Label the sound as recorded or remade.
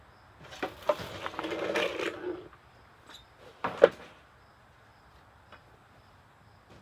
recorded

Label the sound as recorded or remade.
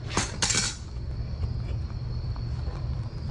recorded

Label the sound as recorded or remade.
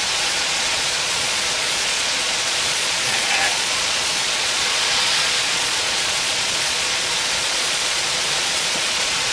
remade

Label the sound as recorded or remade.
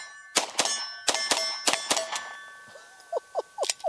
recorded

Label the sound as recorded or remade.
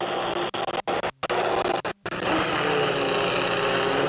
recorded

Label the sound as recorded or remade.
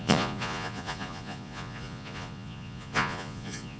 remade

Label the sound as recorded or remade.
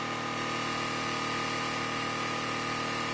recorded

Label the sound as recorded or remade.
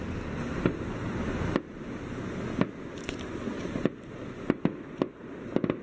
recorded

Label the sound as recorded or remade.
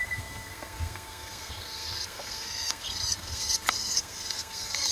remade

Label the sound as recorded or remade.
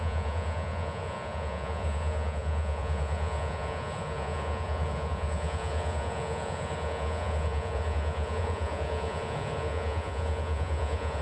remade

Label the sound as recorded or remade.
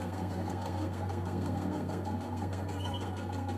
remade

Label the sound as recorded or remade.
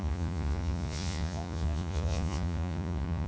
remade